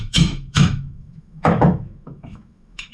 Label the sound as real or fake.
fake